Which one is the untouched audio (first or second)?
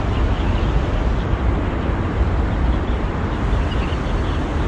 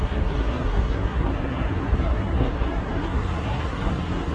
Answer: first